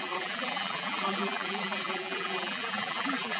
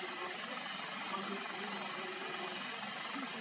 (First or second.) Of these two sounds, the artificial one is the first